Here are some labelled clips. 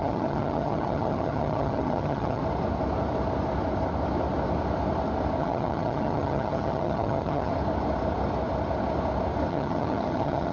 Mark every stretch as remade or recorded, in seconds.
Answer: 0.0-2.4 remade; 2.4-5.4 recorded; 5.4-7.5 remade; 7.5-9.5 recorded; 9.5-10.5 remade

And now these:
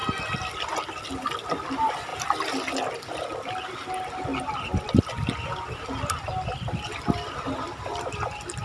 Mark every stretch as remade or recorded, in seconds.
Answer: 0.0-8.6 recorded

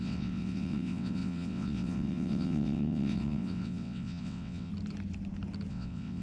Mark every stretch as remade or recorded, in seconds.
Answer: 0.0-4.7 remade; 4.7-5.7 recorded; 5.7-6.2 remade

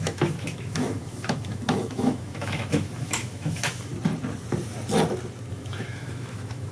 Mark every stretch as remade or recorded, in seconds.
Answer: 0.0-3.9 remade; 3.9-5.5 recorded; 5.5-6.7 remade